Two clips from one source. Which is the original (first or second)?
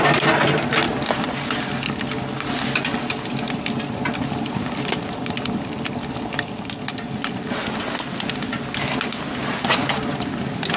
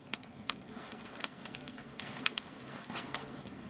first